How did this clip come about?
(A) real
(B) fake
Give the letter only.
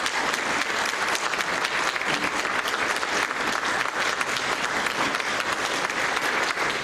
A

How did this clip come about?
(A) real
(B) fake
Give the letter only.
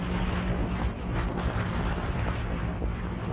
A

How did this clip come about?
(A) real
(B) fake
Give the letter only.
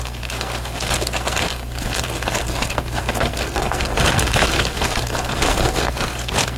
B